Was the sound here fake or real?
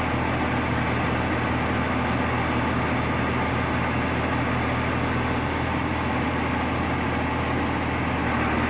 real